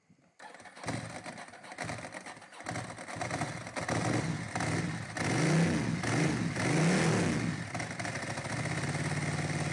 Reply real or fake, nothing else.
real